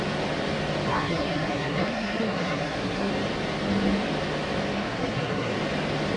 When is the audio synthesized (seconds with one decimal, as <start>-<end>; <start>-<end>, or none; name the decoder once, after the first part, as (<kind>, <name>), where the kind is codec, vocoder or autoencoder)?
0.9-3.1 (codec, SNAC); 4.8-5.5